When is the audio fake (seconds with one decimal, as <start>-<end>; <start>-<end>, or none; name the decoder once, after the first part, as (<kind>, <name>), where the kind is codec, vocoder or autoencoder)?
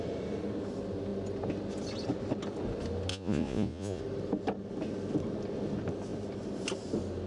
3.1-4.0 (vocoder, Vocos)